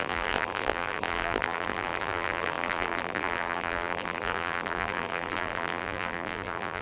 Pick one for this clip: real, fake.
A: fake